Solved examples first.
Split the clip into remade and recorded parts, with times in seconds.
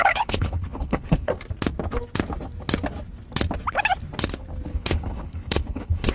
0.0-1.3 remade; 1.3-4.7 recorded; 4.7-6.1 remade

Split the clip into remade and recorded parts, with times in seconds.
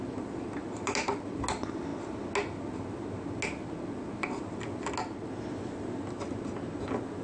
0.0-7.2 recorded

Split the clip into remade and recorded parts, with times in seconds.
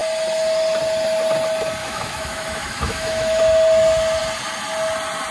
0.0-1.8 recorded; 1.8-3.4 remade; 3.4-5.3 recorded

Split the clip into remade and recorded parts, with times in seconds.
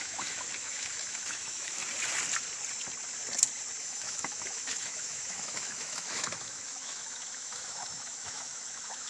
0.0-1.8 remade; 1.8-3.8 recorded; 3.8-9.1 remade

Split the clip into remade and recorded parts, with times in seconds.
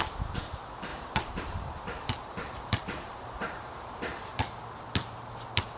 0.0-0.9 recorded; 0.9-4.4 remade; 4.4-5.8 recorded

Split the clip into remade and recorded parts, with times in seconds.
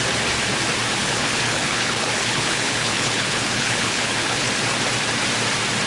0.0-1.0 recorded; 1.0-4.5 remade; 4.5-5.9 recorded